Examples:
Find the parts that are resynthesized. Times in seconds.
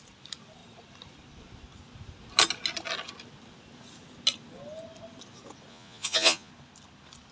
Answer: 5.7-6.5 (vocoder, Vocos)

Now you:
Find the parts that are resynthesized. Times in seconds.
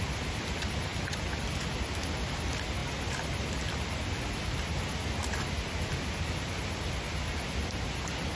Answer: none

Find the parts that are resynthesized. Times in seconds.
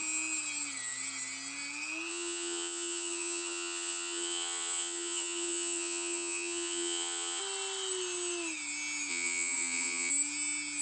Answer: 2.1-7.4 (vocoder, HiFi-GAN); 9.1-10.1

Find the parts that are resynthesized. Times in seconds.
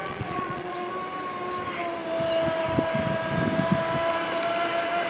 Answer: 0.0-0.9 (vocoder, Vocos)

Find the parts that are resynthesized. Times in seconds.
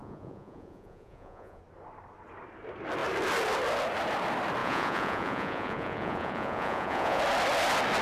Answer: 0.0-1.6 (vocoder, Vocos); 4.6-7.2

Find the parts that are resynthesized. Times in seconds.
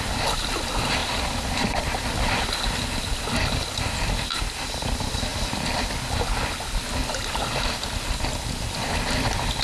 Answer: none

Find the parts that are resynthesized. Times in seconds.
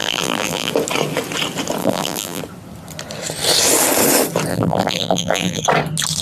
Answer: 0.0-0.7 (vocoder, BigVGAN v2); 1.8-2.4; 4.5-5.6